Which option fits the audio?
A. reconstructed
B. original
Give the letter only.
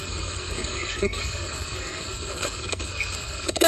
A